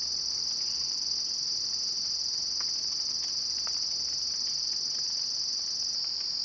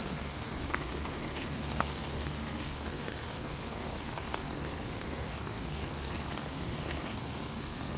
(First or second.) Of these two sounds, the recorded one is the first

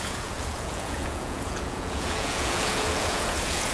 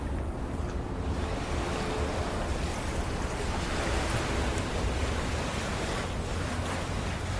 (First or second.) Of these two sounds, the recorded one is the second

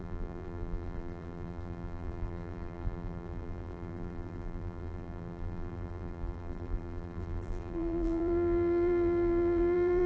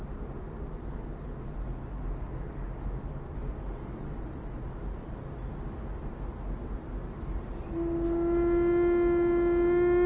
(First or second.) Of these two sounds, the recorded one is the second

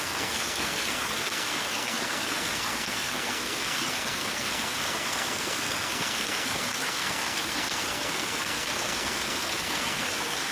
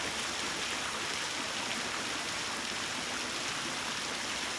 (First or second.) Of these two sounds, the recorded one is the second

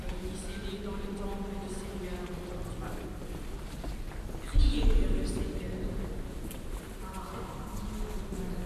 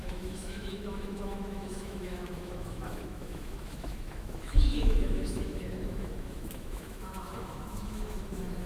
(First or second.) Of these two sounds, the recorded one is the first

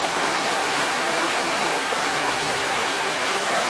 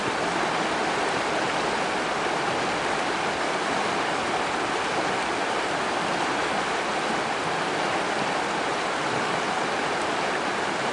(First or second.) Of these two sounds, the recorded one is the second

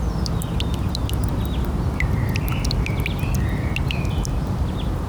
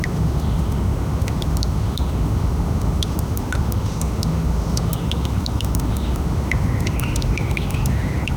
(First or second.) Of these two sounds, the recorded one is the first